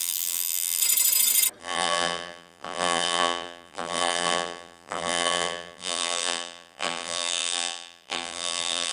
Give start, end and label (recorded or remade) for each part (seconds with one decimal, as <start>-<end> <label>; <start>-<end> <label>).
0.0-0.8 remade; 0.8-1.6 recorded; 1.6-8.9 remade